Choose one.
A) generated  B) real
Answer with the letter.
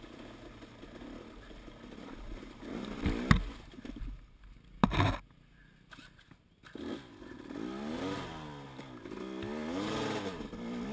B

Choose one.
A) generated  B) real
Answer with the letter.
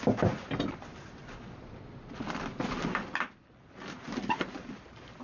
B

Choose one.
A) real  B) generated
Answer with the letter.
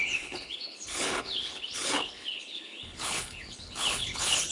B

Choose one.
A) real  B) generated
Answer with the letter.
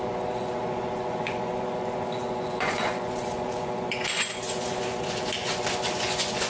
B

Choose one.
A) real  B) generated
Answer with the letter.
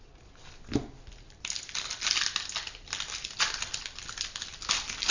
A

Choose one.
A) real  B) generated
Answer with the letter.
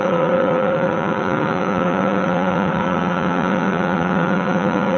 B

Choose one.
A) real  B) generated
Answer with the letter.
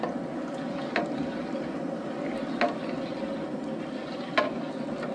A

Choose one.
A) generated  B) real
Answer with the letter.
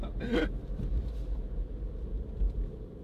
B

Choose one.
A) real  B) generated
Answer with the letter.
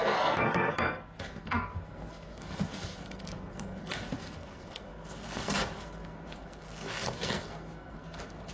B